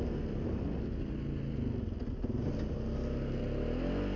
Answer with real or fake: real